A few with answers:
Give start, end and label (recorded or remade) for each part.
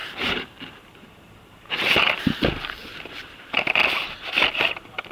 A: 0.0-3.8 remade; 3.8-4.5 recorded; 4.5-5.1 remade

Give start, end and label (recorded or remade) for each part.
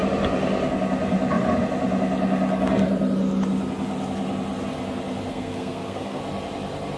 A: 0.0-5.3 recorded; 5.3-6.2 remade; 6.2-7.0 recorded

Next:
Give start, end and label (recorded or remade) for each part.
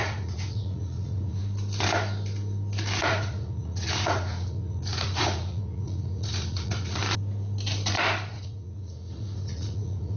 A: 0.0-1.4 remade; 1.4-3.0 recorded; 3.0-7.0 remade; 7.0-8.3 recorded; 8.3-10.2 remade